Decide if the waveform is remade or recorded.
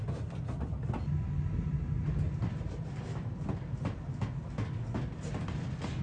recorded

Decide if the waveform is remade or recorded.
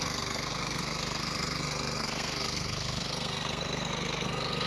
remade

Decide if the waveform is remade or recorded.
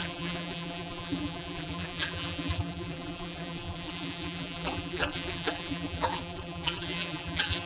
remade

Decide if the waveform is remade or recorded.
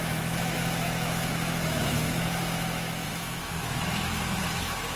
remade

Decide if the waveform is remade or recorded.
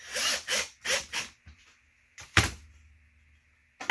recorded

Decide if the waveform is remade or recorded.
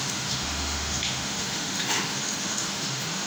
remade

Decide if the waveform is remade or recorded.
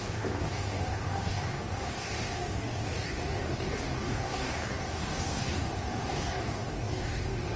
remade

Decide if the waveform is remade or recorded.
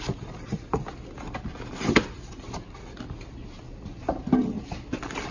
recorded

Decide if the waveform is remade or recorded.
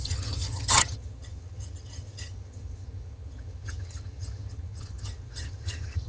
remade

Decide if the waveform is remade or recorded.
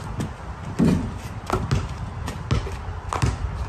recorded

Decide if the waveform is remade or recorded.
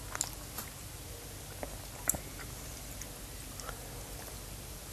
recorded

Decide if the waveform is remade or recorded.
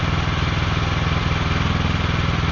recorded